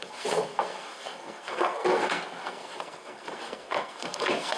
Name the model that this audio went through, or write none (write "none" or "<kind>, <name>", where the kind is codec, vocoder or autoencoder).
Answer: codec, SNAC